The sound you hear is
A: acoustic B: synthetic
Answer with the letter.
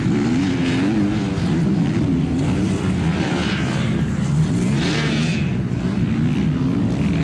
A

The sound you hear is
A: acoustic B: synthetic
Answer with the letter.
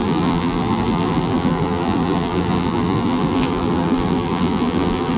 B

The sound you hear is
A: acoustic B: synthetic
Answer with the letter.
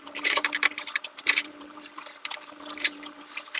B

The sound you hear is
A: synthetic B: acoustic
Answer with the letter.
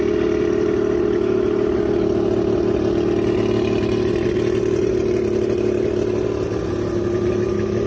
B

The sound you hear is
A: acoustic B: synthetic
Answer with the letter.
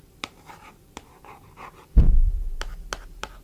B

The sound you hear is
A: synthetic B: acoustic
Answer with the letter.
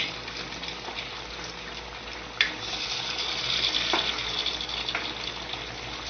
B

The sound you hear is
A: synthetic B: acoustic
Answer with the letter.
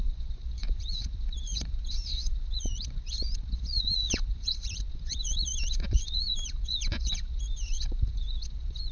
A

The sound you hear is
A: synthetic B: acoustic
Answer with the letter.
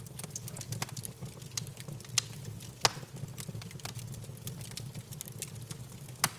B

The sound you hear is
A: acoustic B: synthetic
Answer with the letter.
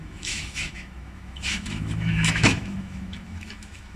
B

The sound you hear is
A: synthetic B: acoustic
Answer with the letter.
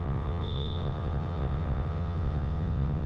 A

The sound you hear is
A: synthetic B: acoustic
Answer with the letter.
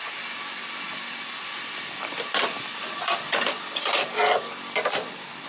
B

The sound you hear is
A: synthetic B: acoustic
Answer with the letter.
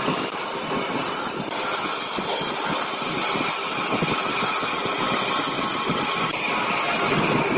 B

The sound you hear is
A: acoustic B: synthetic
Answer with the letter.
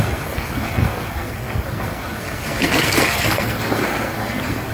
B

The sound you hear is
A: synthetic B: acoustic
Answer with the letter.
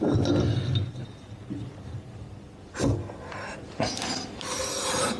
B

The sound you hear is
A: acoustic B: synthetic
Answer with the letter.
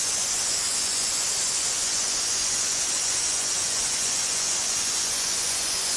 B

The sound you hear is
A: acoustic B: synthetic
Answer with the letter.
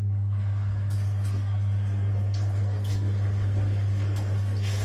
B